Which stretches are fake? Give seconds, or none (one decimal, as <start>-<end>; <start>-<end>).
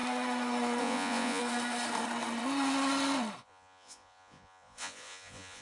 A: 0.8-1.4; 3.4-5.6